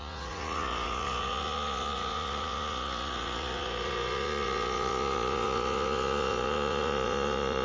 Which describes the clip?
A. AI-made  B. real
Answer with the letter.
A